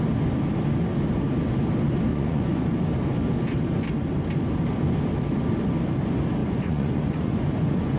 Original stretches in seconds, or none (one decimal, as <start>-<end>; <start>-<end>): 0.0-2.1; 2.7-6.4